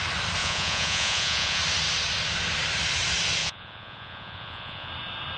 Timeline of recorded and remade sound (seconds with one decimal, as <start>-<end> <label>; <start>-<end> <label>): 0.0-0.4 recorded; 0.4-1.6 remade; 1.6-3.4 recorded; 3.4-4.9 remade; 4.9-5.4 recorded